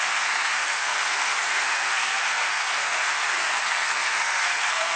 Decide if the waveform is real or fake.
fake